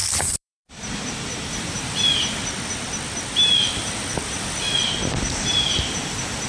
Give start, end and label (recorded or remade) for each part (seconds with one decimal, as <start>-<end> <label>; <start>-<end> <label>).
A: 0.0-0.7 remade; 0.7-6.5 recorded